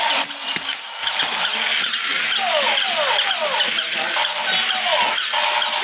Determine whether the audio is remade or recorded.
recorded